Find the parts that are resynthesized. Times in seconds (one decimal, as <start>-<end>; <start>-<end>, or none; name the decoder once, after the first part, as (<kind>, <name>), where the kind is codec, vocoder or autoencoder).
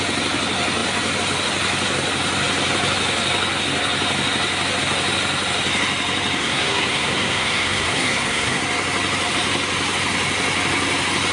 6.4-8.6 (codec, SNAC)